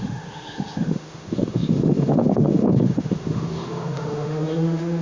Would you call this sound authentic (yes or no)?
no